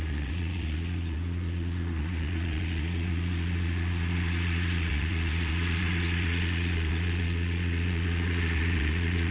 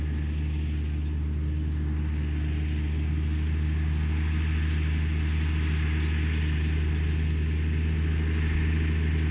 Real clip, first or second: second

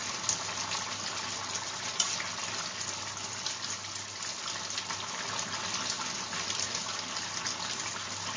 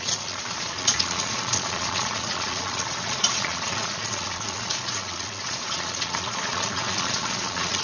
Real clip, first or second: first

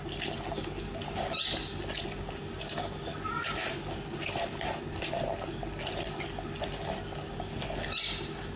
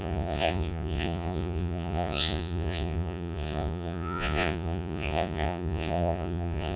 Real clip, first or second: first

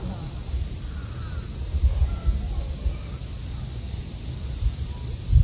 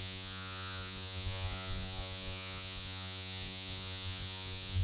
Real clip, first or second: first